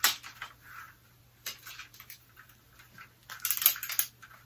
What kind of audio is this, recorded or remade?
recorded